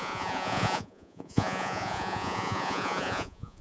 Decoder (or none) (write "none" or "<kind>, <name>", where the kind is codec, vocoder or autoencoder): vocoder, Vocos